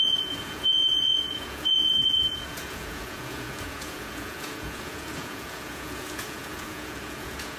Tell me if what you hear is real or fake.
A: fake